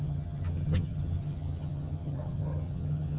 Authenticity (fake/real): fake